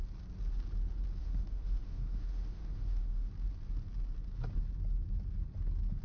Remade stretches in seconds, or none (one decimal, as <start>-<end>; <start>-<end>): 1.2-3.3